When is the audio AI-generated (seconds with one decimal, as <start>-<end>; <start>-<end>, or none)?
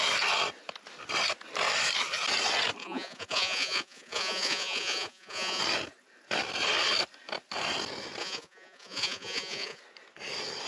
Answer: 2.8-5.6; 8.2-9.8